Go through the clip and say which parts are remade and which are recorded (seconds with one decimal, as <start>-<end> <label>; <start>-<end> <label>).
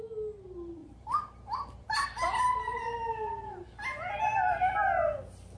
0.0-0.8 recorded; 0.8-4.2 remade; 4.2-5.6 recorded